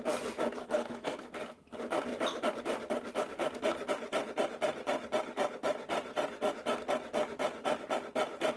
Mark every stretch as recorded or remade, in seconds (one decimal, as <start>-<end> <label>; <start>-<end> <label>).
0.0-0.6 recorded; 0.6-1.3 remade; 1.3-8.6 recorded